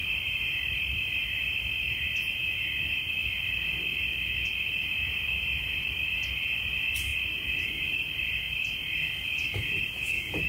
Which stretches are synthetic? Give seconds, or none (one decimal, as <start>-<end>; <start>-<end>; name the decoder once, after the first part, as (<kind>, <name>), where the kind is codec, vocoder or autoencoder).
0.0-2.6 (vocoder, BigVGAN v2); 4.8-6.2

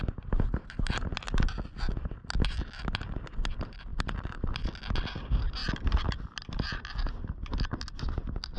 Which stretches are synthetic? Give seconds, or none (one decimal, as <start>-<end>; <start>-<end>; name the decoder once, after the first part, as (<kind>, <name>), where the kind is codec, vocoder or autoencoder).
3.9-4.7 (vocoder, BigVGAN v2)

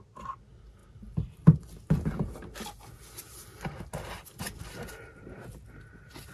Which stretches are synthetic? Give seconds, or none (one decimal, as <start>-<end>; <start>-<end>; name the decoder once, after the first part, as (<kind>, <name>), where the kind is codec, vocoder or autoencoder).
none

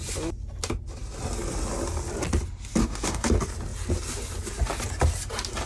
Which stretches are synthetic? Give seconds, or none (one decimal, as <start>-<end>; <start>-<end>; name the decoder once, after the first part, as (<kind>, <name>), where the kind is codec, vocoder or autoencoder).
2.8-3.3 (codec, DAC)